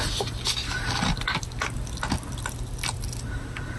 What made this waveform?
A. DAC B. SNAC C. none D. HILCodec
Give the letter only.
C